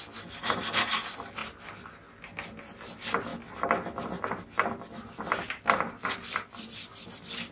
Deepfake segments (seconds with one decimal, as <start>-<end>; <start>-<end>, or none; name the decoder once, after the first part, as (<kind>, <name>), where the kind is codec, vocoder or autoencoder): none